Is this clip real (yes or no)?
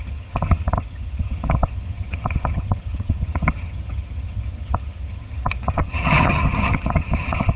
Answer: no